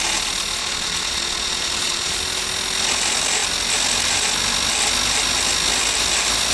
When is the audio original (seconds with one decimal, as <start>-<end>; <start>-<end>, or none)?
0.0-0.6; 2.2-6.5